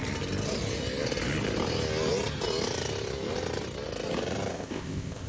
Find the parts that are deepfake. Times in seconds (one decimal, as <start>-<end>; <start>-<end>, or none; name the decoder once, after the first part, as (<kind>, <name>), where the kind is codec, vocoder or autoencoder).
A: 4.5-5.3 (codec, ZipCodec)